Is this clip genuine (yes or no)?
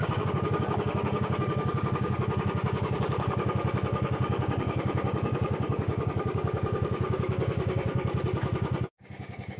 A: no